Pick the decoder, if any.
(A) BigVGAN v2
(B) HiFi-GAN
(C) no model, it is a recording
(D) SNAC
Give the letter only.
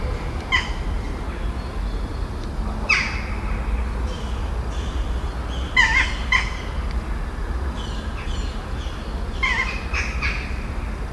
C